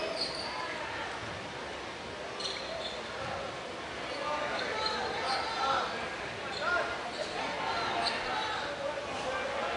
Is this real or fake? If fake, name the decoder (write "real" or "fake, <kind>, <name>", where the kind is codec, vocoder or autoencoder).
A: real